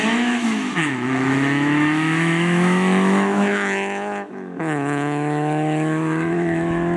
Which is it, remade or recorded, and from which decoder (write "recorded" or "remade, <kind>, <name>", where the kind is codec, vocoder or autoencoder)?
remade, autoencoder, DAC-VAE